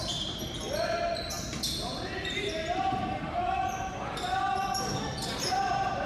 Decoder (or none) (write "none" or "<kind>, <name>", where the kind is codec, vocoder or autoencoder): vocoder, BigVGAN v2